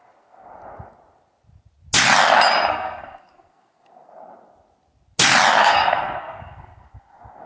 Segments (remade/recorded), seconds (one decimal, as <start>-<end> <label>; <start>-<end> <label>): 0.0-0.5 remade; 0.5-2.7 recorded; 2.7-4.3 remade; 4.3-5.6 recorded; 5.6-7.5 remade